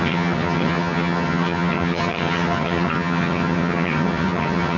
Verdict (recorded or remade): remade